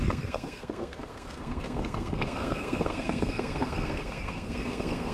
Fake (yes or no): yes